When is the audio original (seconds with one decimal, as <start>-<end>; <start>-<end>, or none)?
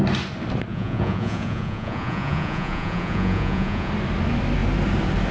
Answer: 0.0-0.7; 3.9-5.3